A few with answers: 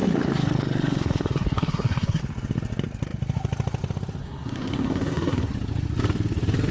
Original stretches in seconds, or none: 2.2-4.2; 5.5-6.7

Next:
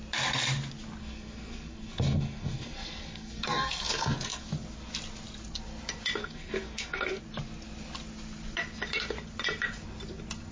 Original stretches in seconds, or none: 0.0-1.0; 4.5-6.2; 7.2-10.5

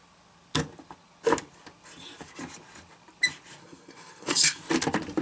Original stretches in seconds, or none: 0.0-3.6; 4.6-5.2

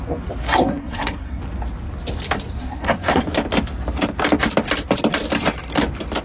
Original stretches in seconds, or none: 0.0-0.4; 1.4-2.6; 3.2-6.2